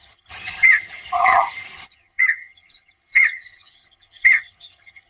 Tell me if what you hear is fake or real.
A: fake